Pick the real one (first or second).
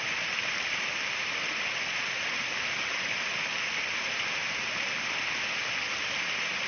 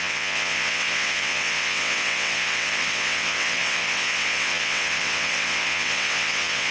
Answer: first